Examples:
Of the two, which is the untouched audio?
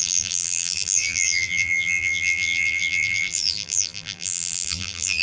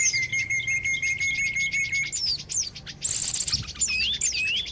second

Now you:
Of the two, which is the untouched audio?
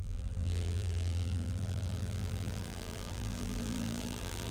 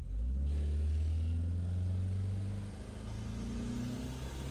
second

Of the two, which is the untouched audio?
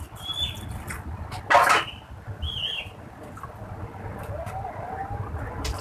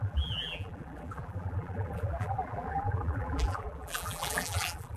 first